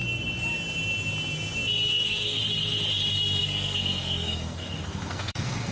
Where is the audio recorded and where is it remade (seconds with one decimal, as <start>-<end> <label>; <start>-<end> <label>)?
0.0-1.9 recorded; 1.9-2.4 remade; 2.4-3.4 recorded; 3.4-5.7 remade